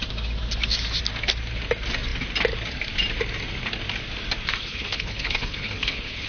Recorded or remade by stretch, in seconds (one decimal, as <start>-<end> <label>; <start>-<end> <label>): 0.0-4.6 recorded; 4.6-6.3 remade